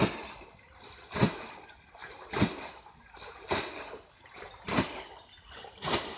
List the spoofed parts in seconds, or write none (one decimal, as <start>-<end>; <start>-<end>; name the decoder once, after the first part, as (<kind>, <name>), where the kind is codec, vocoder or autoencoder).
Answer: none